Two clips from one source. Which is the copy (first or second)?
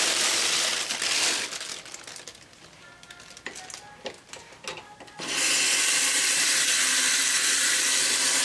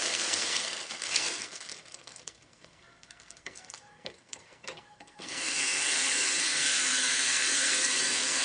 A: second